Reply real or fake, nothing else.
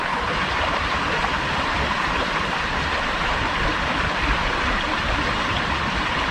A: fake